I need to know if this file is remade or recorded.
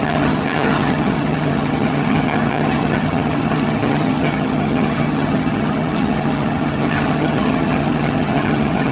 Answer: remade